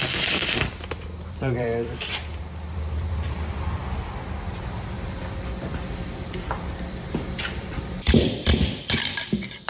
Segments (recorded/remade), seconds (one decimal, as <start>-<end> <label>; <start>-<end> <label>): 0.0-3.8 remade; 3.8-4.5 recorded; 4.5-8.5 remade; 8.5-9.2 recorded; 9.2-9.7 remade